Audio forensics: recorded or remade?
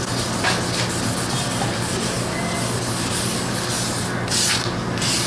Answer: recorded